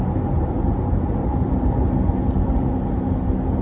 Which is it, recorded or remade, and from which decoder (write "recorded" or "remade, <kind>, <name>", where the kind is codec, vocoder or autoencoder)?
recorded